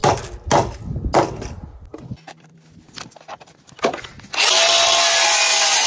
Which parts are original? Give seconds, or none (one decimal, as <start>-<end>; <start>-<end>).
0.0-5.9